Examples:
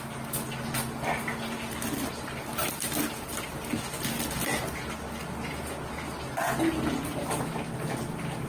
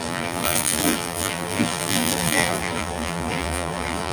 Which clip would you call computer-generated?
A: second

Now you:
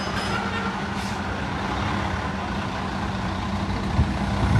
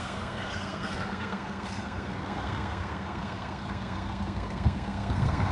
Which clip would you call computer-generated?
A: second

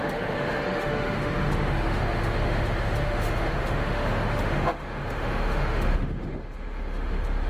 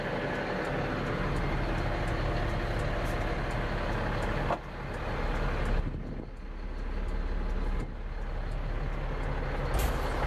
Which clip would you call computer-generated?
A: first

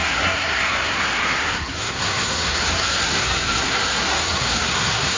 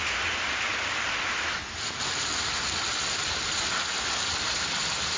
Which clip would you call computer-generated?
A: first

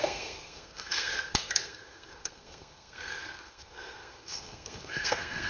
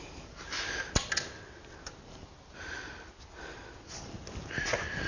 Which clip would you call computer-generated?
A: first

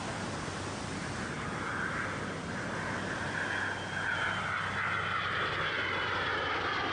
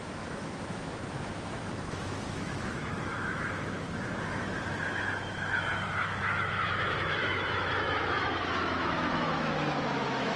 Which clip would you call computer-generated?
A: second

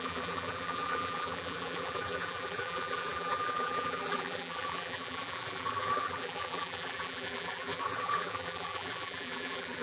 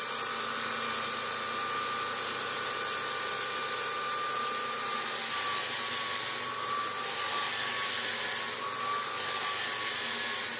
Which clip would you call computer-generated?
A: first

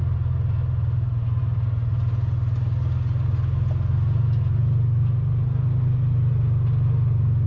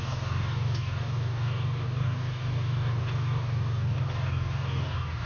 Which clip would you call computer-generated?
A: second